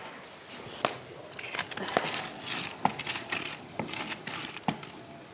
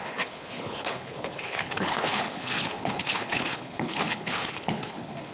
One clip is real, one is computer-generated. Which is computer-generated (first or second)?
second